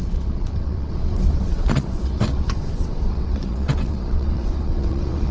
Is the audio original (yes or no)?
no